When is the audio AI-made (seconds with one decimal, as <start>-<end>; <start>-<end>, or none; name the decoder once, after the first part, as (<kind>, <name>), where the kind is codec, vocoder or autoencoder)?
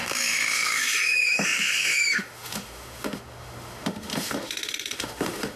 0.0-5.6 (autoencoder, DAC-VAE)